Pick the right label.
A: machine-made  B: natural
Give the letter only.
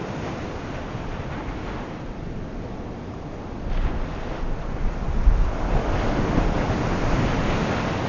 B